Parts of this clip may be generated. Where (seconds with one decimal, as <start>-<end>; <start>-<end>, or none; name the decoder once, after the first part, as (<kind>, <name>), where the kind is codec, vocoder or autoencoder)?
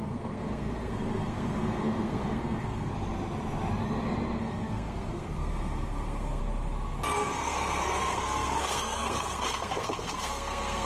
0.0-2.9 (codec, SNAC); 4.4-6.4; 7.2-10.9